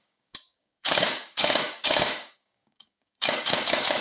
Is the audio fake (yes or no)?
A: yes